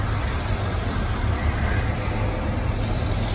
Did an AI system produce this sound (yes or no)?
no